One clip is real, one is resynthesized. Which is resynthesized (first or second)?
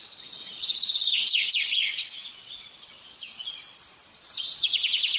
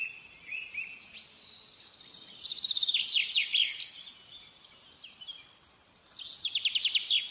first